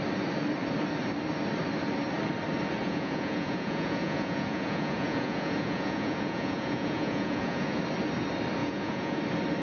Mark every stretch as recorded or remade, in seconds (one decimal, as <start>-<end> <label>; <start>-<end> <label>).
0.0-2.8 recorded; 2.8-7.8 remade; 7.8-8.6 recorded; 8.6-9.2 remade; 9.2-9.6 recorded